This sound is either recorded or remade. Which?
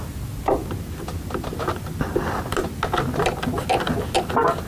recorded